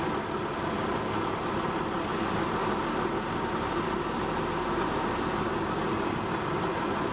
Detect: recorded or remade recorded